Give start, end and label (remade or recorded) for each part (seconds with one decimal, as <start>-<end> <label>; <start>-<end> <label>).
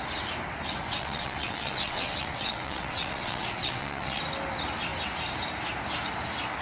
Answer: 0.0-0.9 recorded; 0.9-4.2 remade; 4.2-6.6 recorded